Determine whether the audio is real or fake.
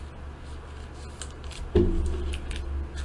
real